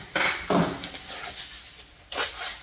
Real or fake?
real